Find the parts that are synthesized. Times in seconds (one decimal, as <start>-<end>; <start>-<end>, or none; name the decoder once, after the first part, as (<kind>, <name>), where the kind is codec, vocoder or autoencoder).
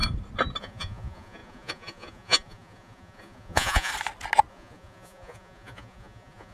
0.6-3.9 (vocoder, Vocos); 4.5-6.5